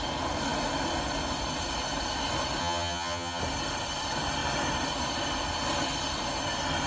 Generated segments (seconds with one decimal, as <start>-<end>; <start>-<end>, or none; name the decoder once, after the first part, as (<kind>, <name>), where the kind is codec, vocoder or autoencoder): 2.6-3.4 (vocoder, HiFi-GAN)